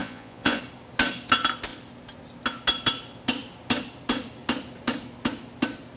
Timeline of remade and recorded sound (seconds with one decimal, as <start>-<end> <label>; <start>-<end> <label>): 0.0-0.6 remade; 0.6-6.0 recorded